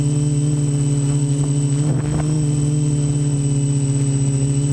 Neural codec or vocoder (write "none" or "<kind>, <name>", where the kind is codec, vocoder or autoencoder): none